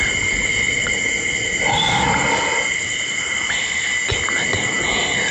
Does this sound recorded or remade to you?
recorded